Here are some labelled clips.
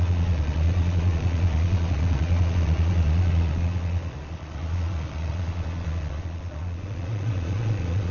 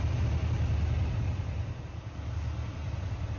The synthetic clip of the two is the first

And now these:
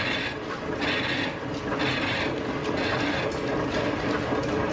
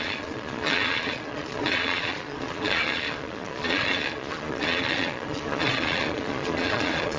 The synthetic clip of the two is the second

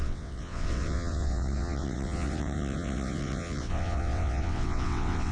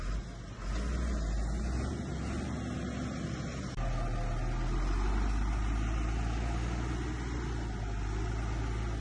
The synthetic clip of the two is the first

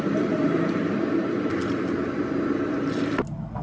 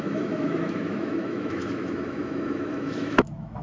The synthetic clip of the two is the second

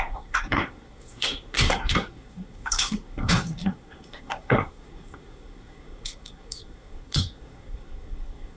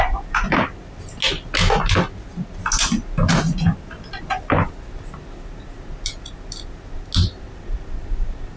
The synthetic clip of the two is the first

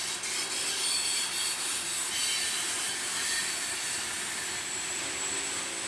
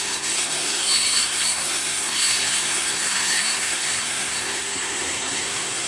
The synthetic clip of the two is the second